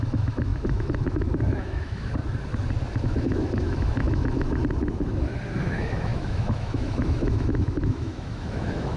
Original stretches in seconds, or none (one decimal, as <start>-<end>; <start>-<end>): 2.2-3.0; 4.6-5.6